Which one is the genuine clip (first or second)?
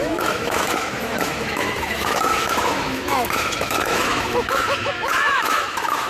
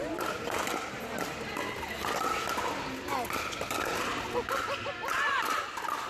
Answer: second